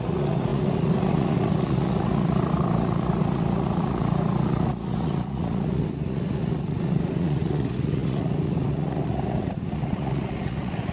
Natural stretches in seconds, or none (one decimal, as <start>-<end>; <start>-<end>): none